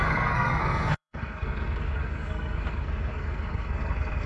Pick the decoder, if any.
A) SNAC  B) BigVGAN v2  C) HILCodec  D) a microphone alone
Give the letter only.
A